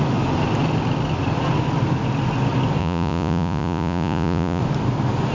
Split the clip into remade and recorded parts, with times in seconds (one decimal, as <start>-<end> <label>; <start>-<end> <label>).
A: 0.0-2.8 recorded; 2.8-4.6 remade; 4.6-5.3 recorded